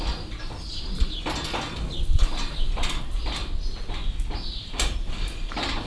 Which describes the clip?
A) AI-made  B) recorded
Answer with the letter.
B